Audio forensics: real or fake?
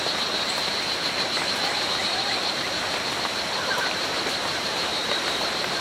fake